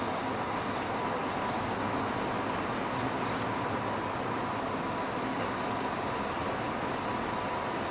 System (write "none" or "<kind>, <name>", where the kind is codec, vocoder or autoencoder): none